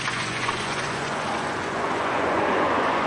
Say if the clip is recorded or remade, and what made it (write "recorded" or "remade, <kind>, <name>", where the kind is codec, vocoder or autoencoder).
remade, vocoder, Vocos